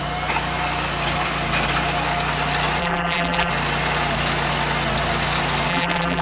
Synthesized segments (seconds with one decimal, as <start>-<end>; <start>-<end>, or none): 2.8-3.5; 5.7-6.2